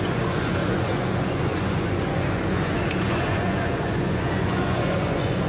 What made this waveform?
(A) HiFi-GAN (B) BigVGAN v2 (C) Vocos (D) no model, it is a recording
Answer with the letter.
C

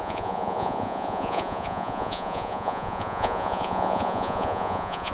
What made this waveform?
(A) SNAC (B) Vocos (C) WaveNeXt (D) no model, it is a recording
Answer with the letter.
B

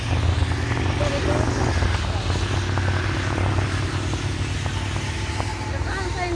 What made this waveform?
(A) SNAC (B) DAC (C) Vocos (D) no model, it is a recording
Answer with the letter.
D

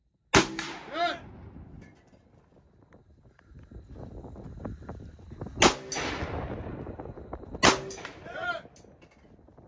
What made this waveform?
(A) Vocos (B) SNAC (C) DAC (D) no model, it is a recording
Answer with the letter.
D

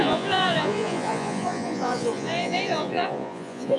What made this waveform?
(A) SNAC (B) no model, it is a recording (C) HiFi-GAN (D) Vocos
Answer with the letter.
D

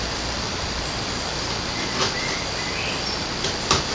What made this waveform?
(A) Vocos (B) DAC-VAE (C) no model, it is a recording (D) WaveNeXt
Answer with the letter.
C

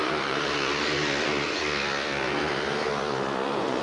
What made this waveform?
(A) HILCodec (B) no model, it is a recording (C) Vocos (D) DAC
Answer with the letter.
C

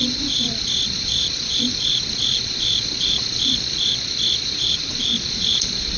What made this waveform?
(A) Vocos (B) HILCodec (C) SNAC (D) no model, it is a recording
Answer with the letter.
A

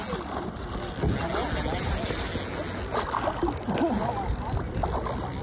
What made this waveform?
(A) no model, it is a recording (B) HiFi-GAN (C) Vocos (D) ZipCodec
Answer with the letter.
A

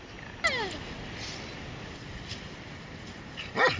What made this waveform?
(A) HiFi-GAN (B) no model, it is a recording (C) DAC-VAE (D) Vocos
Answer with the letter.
B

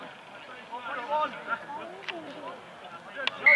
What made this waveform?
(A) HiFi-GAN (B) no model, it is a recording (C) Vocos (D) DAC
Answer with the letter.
B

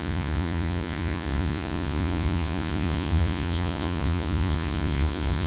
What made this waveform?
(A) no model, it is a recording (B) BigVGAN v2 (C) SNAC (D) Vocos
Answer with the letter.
D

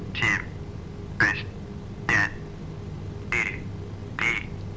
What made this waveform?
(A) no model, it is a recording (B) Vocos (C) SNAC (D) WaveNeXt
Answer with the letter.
A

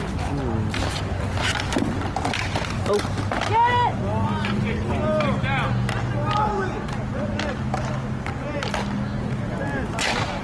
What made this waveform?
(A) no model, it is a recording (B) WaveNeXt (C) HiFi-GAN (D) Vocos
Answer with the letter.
A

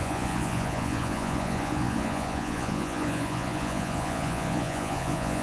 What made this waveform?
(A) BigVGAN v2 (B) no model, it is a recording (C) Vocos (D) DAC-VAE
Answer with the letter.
C